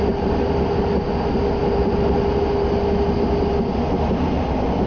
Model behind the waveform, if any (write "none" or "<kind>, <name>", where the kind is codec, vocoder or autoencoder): none